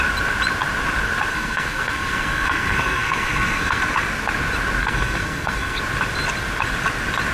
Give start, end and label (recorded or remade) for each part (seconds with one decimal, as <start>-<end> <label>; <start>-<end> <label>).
0.0-1.3 recorded; 1.3-3.8 remade; 3.8-4.8 recorded; 4.8-5.8 remade; 5.8-7.3 recorded